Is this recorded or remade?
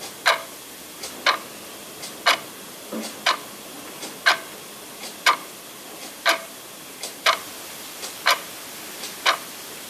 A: recorded